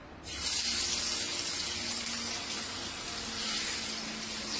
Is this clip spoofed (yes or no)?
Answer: no